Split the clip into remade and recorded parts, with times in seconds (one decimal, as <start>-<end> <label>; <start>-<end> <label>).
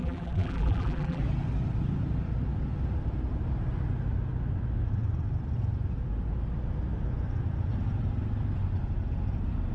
0.0-1.2 remade; 1.2-9.7 recorded